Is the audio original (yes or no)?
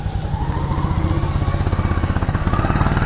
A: yes